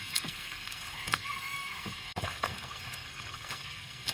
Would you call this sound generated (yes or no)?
yes